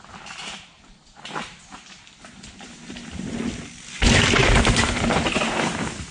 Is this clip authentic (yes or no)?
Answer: yes